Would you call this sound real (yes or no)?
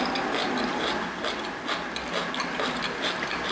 yes